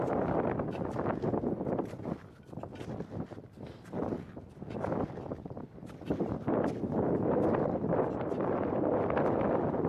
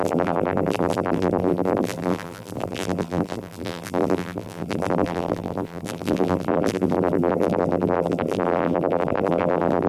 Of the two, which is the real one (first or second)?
first